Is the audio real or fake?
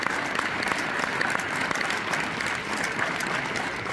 real